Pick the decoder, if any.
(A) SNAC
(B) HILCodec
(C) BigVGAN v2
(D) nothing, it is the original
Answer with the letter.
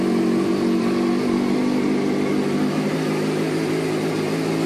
D